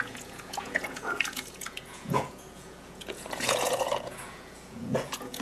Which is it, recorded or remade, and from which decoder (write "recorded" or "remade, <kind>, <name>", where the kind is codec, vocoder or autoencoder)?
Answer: remade, vocoder, Vocos